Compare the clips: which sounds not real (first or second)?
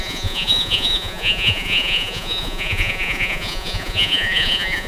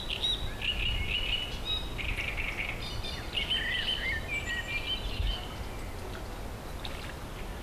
first